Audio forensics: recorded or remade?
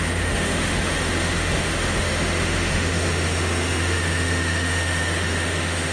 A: remade